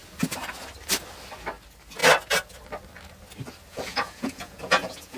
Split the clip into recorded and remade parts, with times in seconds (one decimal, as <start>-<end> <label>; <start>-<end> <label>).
0.0-3.7 recorded; 3.7-5.2 remade